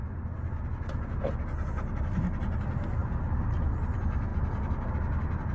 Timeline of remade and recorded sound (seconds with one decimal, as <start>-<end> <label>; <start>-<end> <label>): 0.0-5.5 recorded